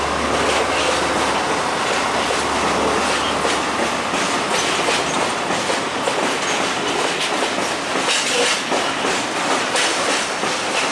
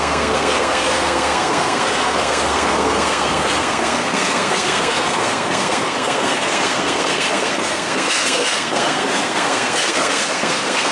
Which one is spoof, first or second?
second